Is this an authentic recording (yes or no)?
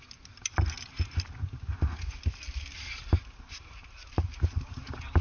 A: yes